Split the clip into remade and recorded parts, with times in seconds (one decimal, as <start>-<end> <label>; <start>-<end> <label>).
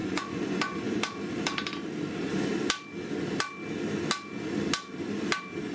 0.0-1.0 remade; 1.0-5.7 recorded